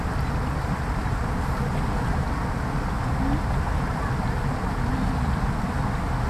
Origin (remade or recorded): recorded